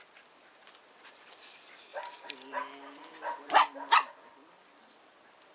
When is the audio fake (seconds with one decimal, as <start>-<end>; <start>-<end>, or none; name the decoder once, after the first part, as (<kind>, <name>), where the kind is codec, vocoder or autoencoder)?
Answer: none